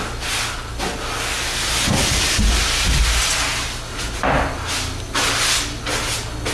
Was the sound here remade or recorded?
recorded